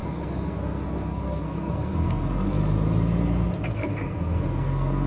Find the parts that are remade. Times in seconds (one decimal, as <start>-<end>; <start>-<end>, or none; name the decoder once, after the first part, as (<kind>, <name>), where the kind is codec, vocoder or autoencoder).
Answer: 0.0-2.6 (codec, SNAC); 3.7-5.1